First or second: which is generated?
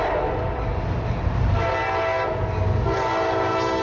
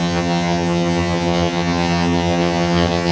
second